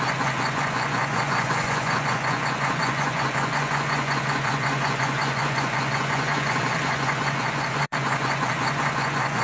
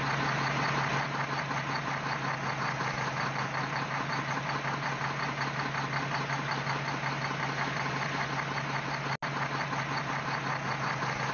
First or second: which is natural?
second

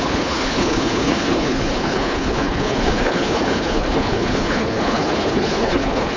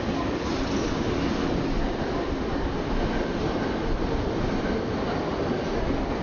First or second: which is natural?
second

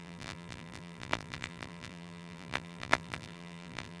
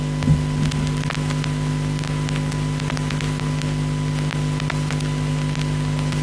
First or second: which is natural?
second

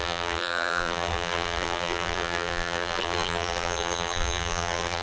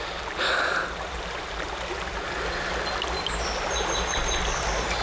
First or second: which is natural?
second